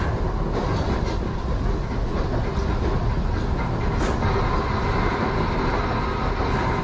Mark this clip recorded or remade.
recorded